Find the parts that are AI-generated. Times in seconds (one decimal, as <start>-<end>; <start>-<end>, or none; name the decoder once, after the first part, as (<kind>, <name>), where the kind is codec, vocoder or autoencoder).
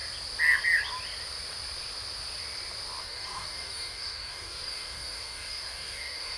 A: 3.0-6.4 (codec, DAC)